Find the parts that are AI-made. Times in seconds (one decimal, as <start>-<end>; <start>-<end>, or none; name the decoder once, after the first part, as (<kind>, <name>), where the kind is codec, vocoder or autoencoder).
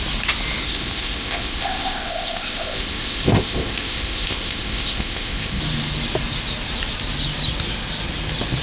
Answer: 0.6-5.6 (codec, ZipCodec)